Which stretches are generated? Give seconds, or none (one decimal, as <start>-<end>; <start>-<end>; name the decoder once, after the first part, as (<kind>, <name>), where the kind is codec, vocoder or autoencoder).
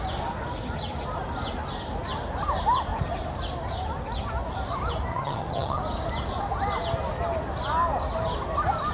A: 5.1-5.8 (vocoder, HiFi-GAN)